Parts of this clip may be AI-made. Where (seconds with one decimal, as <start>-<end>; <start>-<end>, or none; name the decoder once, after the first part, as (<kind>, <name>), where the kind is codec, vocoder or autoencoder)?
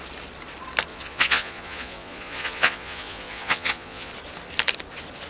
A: 0.9-4.1 (vocoder, Vocos)